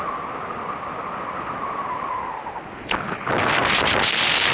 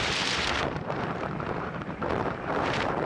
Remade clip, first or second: second